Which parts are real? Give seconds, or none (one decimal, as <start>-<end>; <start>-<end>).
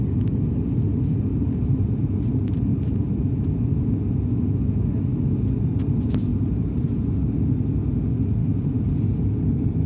0.0-1.3; 3.5-6.3; 7.2-8.4